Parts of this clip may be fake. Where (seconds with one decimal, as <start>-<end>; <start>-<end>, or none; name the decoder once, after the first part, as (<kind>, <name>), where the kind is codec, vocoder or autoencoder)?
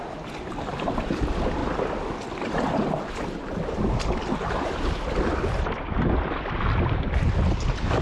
none